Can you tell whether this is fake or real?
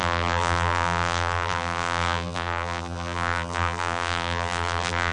fake